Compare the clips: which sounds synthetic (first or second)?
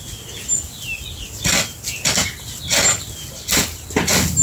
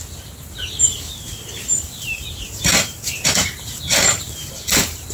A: second